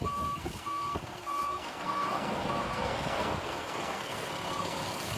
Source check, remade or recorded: remade